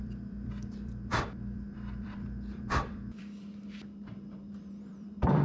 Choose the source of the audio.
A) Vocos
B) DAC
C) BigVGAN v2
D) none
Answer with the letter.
C